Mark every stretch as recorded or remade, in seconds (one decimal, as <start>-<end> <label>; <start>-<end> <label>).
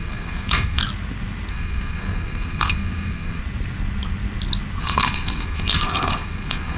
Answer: 0.0-0.8 remade; 0.8-1.5 recorded; 1.5-3.4 remade; 3.4-4.8 recorded; 4.8-6.8 remade